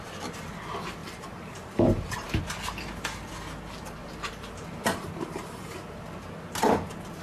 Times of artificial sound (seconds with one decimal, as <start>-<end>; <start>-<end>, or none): 1.0-2.4; 4.0-6.2